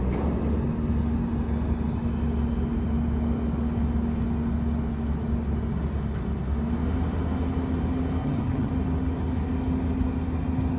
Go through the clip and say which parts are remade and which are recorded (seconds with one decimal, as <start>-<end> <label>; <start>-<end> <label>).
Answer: 0.0-8.2 recorded; 8.2-8.7 remade; 8.7-10.8 recorded